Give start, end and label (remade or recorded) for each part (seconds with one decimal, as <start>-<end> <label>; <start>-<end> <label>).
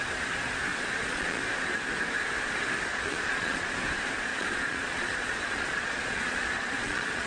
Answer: 0.0-0.7 recorded; 0.7-1.4 remade; 1.4-2.9 recorded; 2.9-3.7 remade; 3.7-4.3 recorded; 4.3-7.3 remade